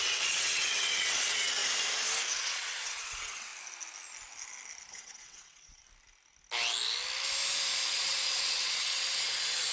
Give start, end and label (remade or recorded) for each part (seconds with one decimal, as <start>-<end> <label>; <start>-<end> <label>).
0.0-1.6 remade; 1.6-2.4 recorded; 2.4-3.5 remade; 3.5-4.9 recorded; 4.9-5.8 remade; 5.8-7.9 recorded; 7.9-9.7 remade